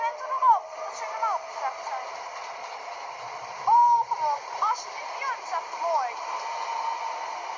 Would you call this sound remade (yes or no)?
no